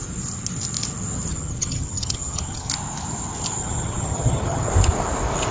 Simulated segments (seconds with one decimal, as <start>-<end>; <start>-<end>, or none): 1.3-2.7; 3.6-4.7